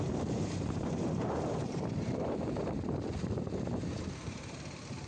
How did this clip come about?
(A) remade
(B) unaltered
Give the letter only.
A